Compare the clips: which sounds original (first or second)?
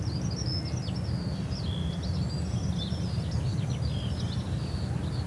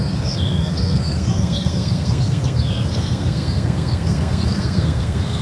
first